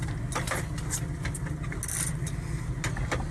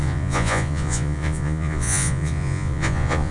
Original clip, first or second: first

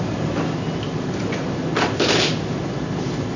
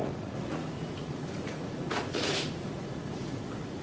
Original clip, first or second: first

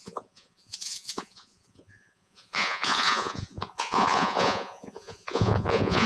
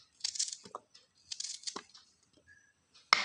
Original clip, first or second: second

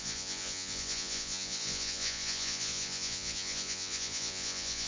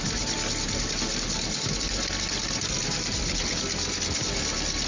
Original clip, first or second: second